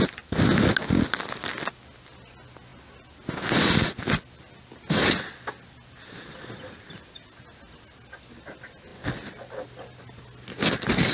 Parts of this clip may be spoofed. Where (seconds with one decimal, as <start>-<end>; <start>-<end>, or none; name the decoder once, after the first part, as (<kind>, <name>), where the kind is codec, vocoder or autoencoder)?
none